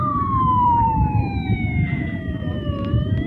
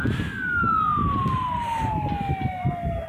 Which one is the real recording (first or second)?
second